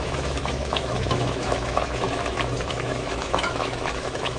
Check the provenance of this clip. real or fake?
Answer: fake